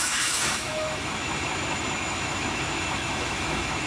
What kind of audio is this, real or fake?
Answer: fake